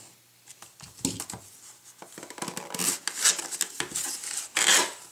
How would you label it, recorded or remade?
recorded